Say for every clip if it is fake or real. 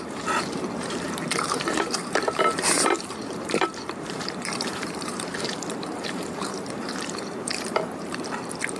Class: fake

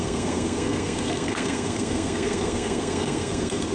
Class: fake